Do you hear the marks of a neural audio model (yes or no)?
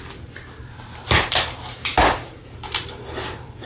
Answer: yes